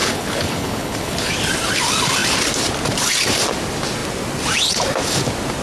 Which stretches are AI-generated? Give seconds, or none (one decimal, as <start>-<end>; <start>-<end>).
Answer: 0.0-1.3